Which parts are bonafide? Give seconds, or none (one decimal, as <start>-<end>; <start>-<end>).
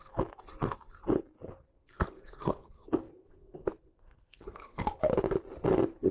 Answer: 0.0-1.8; 2.7-3.2; 4.8-6.1